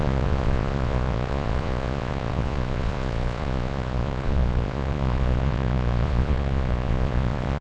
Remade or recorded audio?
remade